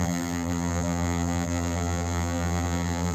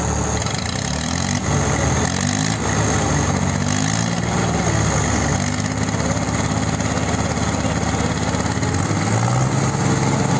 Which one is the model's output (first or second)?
first